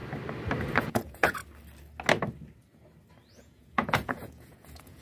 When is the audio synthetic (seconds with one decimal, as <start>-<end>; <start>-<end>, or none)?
0.8-1.4; 3.3-5.0